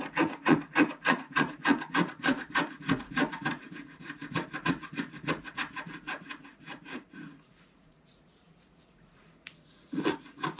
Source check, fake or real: fake